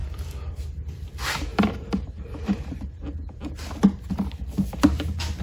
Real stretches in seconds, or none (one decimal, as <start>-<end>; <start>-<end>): 0.0-1.5; 3.5-5.4

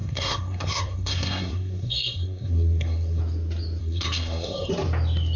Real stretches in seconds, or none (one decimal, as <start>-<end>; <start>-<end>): 3.2-3.8; 4.7-5.4

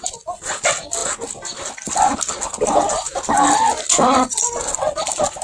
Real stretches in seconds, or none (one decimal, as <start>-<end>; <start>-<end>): 0.0-5.4

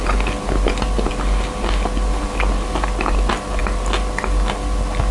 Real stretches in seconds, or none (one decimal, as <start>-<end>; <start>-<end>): 0.0-5.1